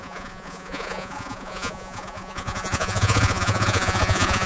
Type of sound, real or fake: fake